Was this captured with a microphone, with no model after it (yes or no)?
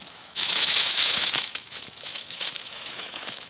no